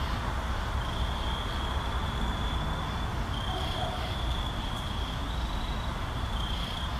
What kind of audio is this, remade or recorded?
recorded